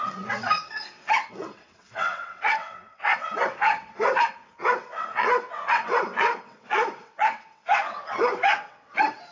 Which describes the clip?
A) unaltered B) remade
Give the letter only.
B